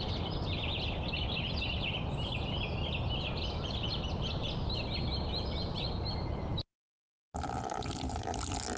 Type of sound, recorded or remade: recorded